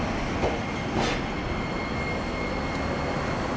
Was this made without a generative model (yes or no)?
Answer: yes